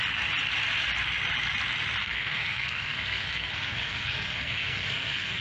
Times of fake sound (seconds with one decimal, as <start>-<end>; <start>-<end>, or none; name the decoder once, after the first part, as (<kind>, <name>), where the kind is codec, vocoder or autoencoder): 2.0-5.4 (codec, SNAC)